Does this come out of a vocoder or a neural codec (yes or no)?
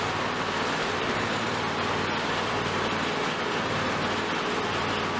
no